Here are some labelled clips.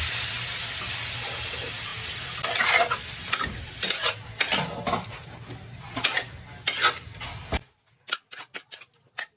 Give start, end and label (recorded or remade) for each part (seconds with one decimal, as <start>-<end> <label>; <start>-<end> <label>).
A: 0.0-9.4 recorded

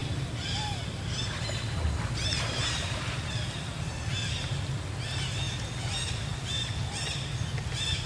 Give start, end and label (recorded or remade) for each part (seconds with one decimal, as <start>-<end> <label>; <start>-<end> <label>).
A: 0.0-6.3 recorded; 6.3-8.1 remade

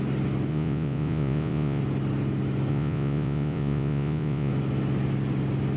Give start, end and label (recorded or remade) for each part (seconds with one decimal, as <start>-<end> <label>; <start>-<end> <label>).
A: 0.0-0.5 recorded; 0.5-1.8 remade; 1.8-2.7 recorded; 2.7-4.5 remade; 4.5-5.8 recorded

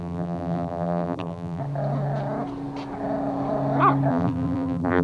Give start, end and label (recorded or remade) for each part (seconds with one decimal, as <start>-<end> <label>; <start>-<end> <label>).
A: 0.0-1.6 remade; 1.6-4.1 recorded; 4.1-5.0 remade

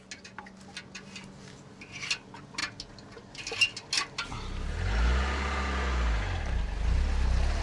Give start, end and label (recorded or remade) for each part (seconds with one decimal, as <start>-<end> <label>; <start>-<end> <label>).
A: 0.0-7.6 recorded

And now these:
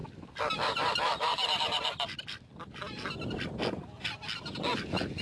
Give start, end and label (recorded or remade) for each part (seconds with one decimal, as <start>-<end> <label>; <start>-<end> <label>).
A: 0.0-3.1 remade; 3.1-5.2 recorded

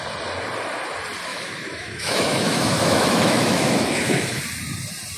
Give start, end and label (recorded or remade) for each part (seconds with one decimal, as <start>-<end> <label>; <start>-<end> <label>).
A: 0.0-1.3 recorded; 1.3-4.4 remade; 4.4-5.2 recorded

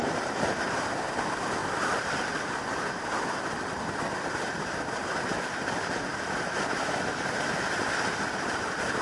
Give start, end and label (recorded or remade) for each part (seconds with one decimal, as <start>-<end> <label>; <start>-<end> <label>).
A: 0.0-9.0 remade